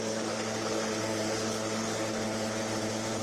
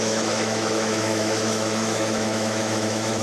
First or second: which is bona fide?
first